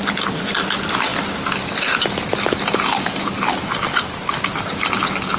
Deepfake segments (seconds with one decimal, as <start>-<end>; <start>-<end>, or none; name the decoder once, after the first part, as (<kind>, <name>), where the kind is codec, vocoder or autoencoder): none